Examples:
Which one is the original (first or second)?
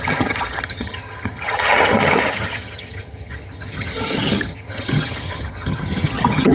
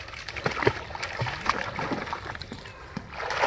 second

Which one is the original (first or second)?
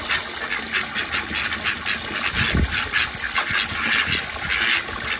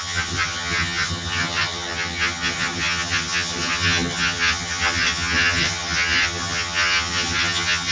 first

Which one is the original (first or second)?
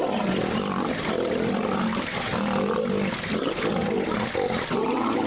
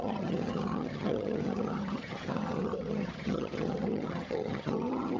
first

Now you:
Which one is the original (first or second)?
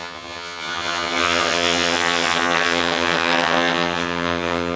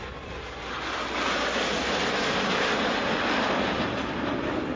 second